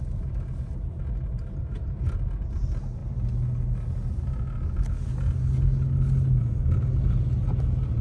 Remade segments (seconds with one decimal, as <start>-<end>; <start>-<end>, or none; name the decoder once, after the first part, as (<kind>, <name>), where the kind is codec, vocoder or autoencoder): none